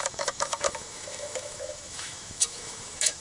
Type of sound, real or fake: fake